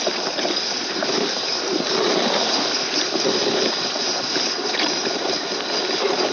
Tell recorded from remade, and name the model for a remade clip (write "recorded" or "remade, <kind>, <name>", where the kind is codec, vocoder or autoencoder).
recorded